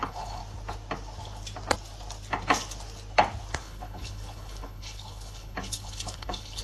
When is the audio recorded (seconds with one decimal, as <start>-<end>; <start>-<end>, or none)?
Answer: 0.4-3.6